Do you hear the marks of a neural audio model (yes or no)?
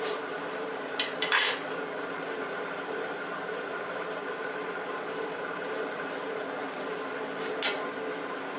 yes